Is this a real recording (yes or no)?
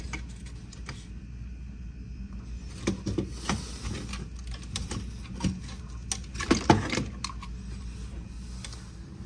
yes